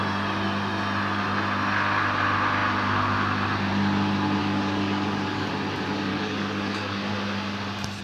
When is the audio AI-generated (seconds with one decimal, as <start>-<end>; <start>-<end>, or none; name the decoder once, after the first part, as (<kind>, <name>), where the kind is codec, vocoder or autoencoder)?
4.4-5.5 (codec, DAC); 6.1-7.1